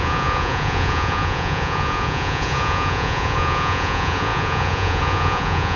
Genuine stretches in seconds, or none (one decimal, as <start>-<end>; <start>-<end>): none